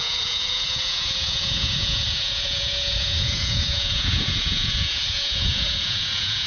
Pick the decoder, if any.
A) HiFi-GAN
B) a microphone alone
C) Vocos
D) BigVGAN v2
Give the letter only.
C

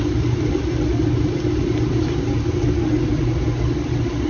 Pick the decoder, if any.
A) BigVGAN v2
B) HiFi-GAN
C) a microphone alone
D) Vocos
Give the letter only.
C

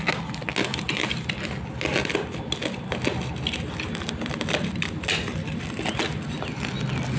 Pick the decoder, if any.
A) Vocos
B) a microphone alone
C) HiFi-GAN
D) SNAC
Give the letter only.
B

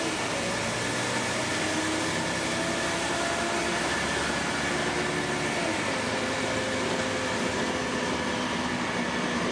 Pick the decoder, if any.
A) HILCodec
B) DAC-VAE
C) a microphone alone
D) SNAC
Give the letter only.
C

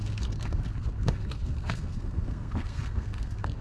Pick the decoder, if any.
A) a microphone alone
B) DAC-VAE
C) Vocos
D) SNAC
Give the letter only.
D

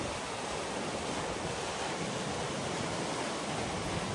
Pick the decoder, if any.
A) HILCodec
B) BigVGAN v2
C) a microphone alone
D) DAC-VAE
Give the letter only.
C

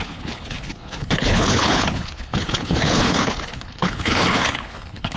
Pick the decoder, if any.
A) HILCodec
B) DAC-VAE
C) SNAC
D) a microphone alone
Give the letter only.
A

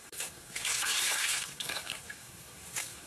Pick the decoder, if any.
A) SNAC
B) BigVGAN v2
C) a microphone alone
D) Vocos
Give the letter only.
A